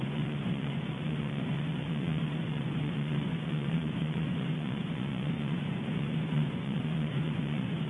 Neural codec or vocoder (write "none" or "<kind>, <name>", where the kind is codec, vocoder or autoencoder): vocoder, Vocos